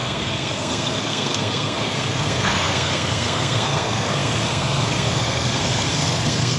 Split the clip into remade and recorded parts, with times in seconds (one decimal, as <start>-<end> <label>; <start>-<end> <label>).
0.0-6.6 remade